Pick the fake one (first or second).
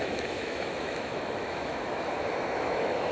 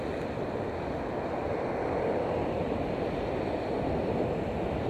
first